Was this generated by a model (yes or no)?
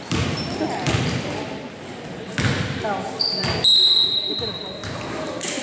no